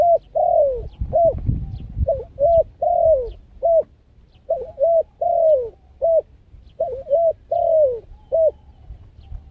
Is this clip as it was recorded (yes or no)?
yes